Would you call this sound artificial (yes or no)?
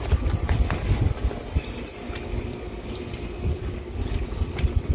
no